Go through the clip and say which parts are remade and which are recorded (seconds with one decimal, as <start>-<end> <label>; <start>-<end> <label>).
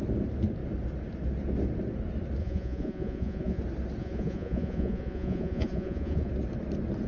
0.0-2.4 recorded; 2.4-3.6 remade; 3.6-4.0 recorded; 4.0-6.3 remade; 6.3-7.1 recorded